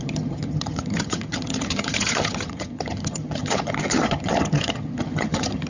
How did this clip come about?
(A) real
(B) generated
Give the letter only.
B